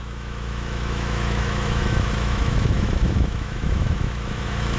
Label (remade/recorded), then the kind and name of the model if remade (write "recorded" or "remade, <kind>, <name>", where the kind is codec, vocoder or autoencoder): remade, autoencoder, DAC-VAE